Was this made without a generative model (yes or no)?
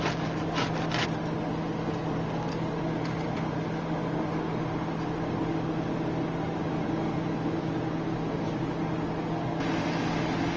yes